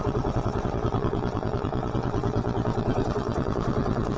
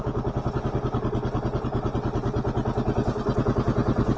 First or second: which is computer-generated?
first